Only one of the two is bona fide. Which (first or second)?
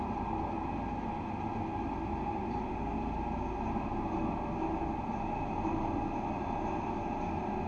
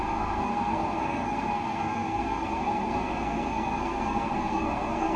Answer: first